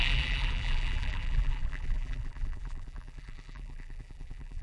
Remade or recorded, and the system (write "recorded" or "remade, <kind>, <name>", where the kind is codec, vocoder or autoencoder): remade, vocoder, BigVGAN v2